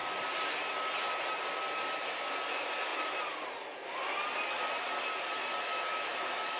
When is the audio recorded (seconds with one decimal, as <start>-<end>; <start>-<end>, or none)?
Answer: 0.0-5.7